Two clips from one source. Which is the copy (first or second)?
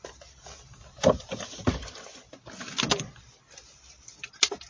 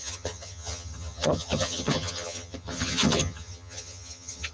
second